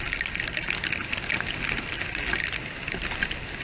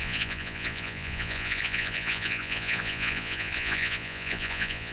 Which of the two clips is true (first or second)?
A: first